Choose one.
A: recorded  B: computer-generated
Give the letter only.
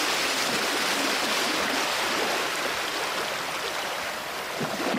A